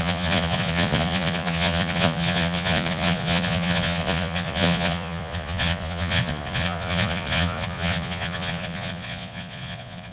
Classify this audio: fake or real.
fake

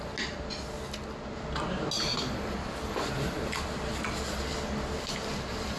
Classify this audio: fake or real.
real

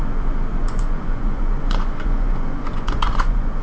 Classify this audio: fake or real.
fake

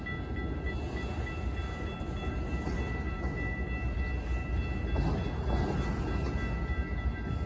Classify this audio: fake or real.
real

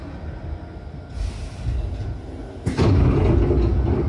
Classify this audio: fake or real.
real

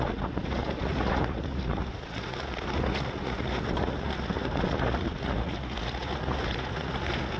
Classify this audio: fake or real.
fake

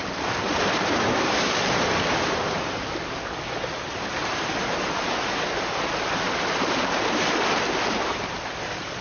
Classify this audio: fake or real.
real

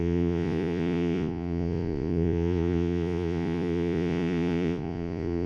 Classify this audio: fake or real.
fake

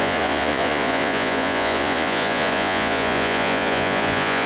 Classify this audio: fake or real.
fake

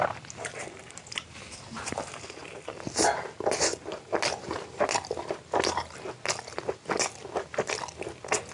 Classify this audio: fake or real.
real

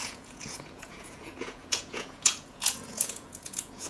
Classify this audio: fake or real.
fake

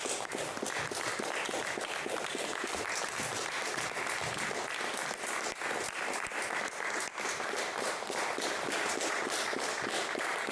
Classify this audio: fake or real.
real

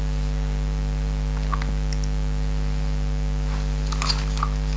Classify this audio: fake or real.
real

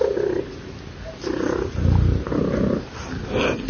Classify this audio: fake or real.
real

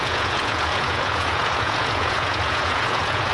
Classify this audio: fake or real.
fake